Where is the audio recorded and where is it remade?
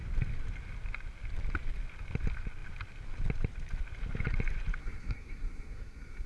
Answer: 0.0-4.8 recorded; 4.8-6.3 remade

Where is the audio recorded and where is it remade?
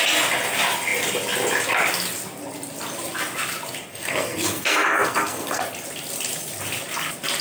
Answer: 0.0-3.9 recorded; 3.9-5.6 remade; 5.6-7.4 recorded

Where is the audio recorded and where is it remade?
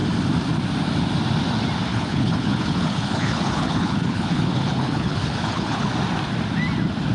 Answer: 0.0-1.9 recorded; 1.9-5.9 remade; 5.9-7.1 recorded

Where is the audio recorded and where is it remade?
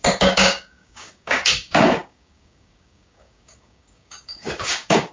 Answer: 0.0-5.1 remade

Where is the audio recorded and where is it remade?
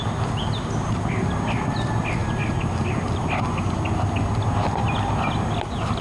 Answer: 0.0-6.0 recorded